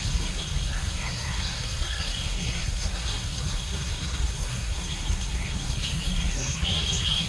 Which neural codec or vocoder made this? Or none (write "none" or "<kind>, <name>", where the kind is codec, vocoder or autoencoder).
codec, SNAC